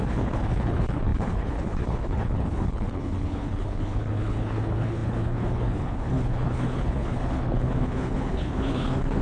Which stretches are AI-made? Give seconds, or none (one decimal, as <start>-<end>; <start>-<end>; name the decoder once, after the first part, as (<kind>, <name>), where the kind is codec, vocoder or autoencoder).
0.0-9.2 (codec, HILCodec)